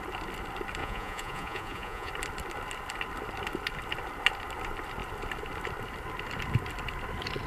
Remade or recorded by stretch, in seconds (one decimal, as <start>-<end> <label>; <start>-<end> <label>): 0.0-0.8 recorded; 0.8-2.1 remade; 2.1-7.5 recorded

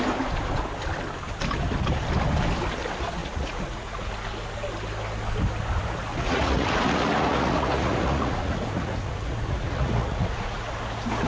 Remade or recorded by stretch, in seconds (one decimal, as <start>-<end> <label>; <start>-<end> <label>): 0.0-3.2 recorded; 3.2-4.1 remade; 4.1-6.1 recorded; 6.1-10.7 remade; 10.7-11.3 recorded

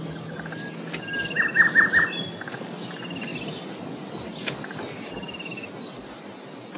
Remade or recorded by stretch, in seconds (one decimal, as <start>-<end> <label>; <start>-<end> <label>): 0.0-6.8 recorded

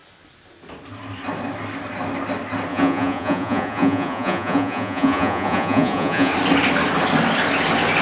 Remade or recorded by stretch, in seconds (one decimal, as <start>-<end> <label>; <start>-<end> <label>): 0.0-2.7 recorded; 2.7-6.3 remade; 6.3-8.0 recorded